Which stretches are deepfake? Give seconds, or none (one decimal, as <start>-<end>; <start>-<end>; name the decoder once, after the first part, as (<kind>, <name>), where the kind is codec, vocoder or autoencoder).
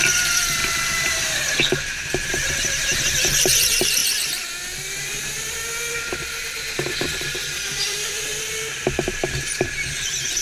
0.0-4.0 (vocoder, BigVGAN v2); 7.0-10.4